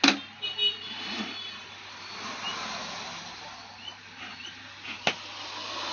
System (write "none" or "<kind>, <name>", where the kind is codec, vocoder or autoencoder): none